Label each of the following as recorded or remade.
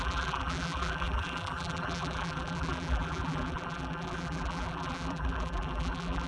remade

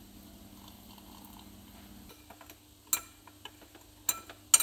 recorded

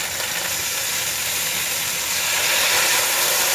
recorded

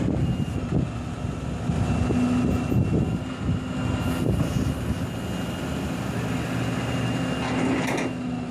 recorded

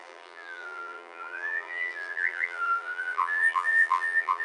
remade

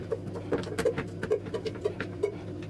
remade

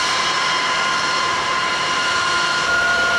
remade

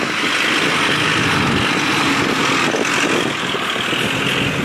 recorded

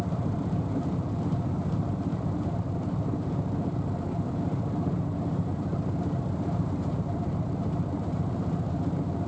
remade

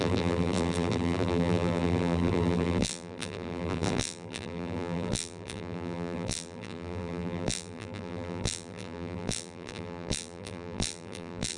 remade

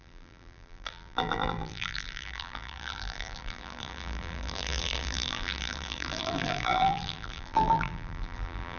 remade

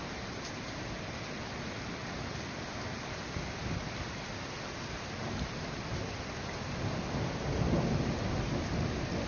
remade